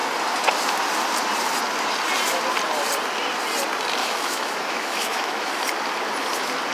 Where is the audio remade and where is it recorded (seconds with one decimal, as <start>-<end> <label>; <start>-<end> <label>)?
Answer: 0.0-4.0 recorded; 4.0-5.5 remade; 5.5-6.7 recorded